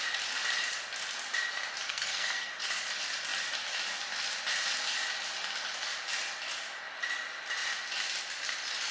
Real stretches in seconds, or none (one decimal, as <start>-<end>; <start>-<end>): 0.0-1.9; 2.5-8.9